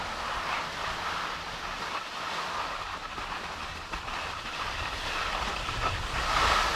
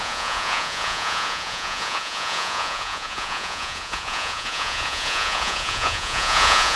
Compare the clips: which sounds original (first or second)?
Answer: first